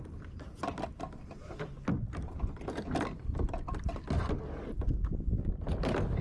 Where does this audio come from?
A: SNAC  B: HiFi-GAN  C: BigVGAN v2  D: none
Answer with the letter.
D